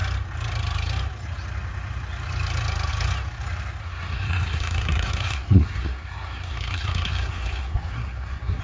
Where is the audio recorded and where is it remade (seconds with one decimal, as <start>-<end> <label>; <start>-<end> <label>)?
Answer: 0.0-3.8 recorded; 3.8-8.6 remade